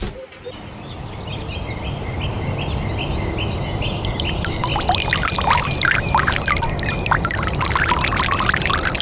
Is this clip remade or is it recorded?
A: recorded